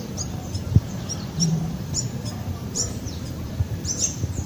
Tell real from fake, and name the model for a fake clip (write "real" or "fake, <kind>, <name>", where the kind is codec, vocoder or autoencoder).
fake, vocoder, BigVGAN v2